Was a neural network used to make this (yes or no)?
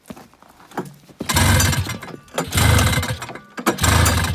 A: no